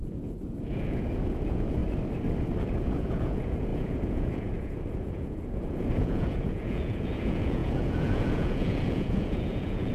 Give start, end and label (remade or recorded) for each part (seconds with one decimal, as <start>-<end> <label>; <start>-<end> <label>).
0.0-1.8 remade; 1.8-2.6 recorded; 2.6-9.9 remade